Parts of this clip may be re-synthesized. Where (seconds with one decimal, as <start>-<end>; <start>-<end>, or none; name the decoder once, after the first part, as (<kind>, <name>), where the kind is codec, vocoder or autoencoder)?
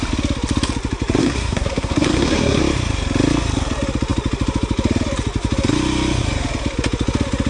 1.2-2.6 (codec, SNAC)